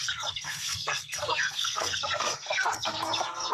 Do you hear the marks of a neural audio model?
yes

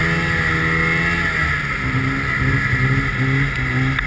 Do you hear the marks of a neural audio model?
no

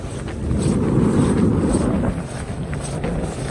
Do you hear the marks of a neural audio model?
no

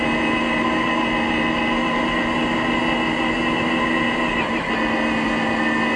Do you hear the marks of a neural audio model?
no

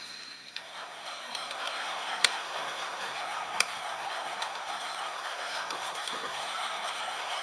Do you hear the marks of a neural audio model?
yes